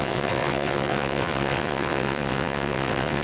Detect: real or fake fake